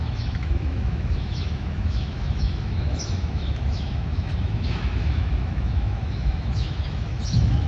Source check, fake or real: fake